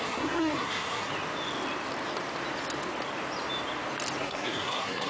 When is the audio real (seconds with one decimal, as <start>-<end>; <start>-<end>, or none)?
1.1-4.2

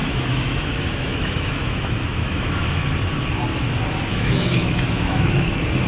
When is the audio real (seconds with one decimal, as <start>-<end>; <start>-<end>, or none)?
2.8-4.1; 5.5-5.9